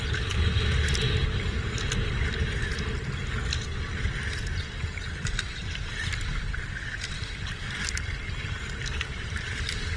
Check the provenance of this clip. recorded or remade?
recorded